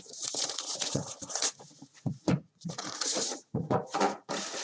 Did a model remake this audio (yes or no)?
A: yes